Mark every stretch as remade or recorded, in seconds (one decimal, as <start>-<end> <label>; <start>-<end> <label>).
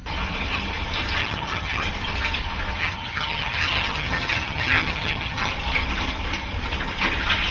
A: 0.0-1.2 recorded; 1.2-1.8 remade; 1.8-2.8 recorded; 2.8-5.5 remade; 5.5-7.5 recorded